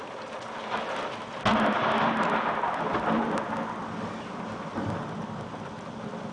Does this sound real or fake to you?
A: real